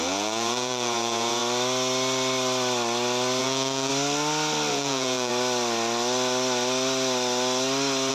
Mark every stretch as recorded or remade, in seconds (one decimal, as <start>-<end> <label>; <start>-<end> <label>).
0.0-1.4 remade; 1.4-3.4 recorded; 3.4-3.9 remade; 3.9-4.7 recorded; 4.7-5.3 remade; 5.3-8.1 recorded